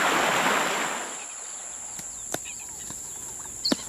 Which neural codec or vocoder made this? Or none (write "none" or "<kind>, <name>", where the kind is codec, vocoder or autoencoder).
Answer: none